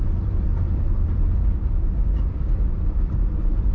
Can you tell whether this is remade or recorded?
remade